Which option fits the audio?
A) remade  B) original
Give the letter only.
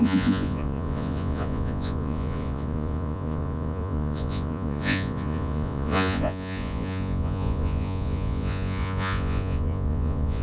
A